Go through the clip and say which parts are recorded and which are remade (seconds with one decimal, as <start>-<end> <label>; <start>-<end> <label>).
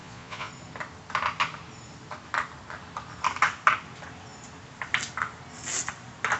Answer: 0.0-0.5 remade; 0.5-6.4 recorded